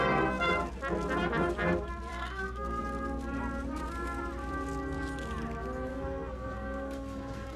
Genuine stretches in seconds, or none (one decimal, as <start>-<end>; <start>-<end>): 0.0-2.1; 2.8-5.9